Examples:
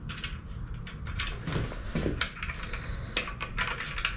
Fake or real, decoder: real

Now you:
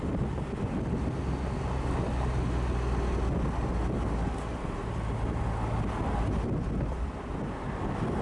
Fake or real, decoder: real